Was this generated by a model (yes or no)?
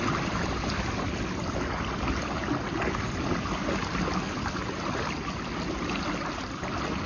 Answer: no